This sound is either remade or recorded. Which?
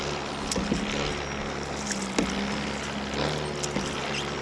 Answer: recorded